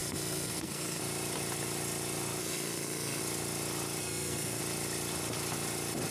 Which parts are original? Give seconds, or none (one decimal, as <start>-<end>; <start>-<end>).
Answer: 1.0-2.4; 3.2-4.0; 4.6-6.1